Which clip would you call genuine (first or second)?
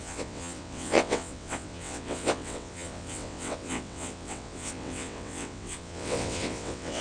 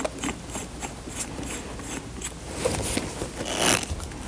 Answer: second